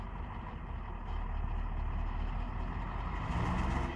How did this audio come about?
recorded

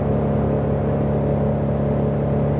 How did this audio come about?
recorded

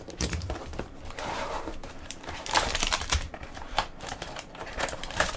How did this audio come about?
remade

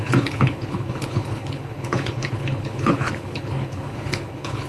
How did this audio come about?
remade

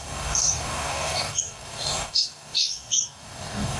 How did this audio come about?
remade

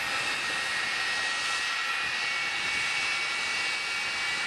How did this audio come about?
recorded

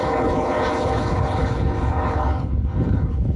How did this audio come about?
remade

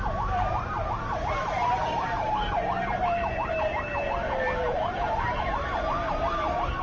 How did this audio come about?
remade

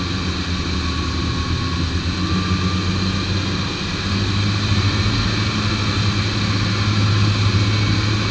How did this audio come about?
recorded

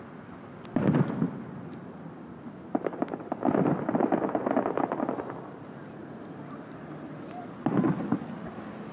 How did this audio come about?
recorded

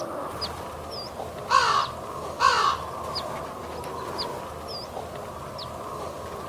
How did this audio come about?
recorded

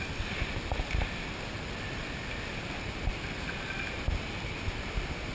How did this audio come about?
recorded